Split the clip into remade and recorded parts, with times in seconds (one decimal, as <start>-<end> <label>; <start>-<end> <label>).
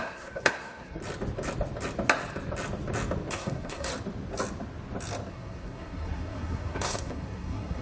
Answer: 0.0-1.0 remade; 1.0-3.3 recorded; 3.3-3.9 remade; 3.9-5.3 recorded; 5.3-7.8 remade